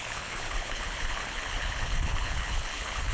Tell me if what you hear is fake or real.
fake